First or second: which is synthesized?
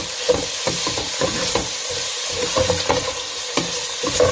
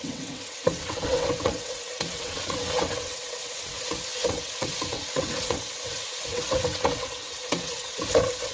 second